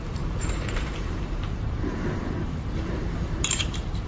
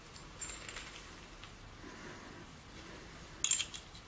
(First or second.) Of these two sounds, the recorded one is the second